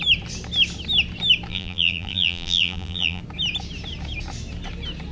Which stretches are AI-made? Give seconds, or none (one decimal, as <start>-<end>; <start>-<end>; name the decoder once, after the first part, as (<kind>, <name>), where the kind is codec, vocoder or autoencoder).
1.5-3.2 (vocoder, BigVGAN v2)